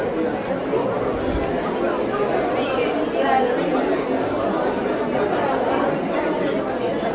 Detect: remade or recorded recorded